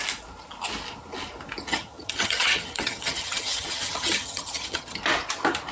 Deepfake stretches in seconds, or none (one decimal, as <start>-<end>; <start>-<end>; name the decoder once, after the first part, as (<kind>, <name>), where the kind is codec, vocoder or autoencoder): 1.7-5.0 (vocoder, HiFi-GAN)